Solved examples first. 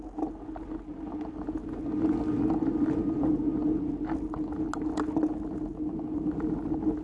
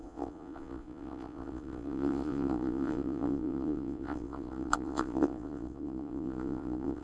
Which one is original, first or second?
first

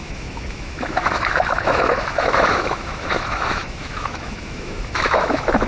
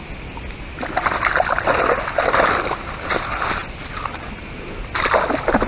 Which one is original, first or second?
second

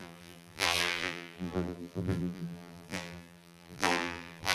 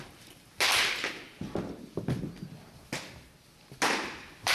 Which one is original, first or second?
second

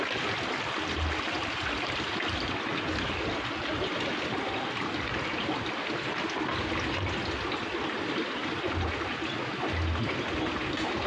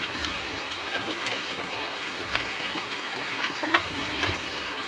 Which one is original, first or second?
first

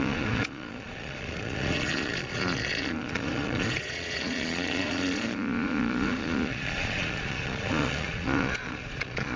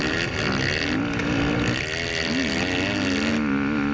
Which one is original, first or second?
second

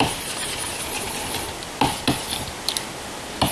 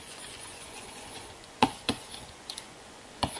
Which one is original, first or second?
first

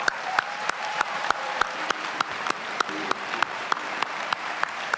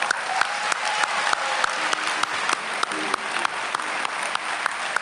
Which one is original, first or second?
second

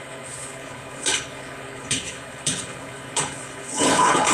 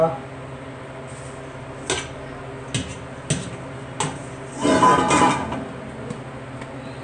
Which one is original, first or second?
second